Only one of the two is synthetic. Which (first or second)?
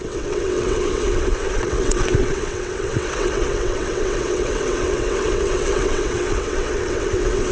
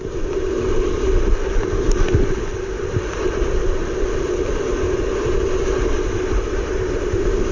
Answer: first